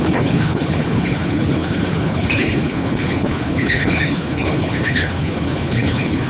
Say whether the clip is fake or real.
fake